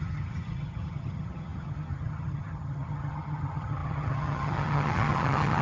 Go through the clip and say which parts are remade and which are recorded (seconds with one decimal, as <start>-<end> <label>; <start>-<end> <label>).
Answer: 0.0-5.6 remade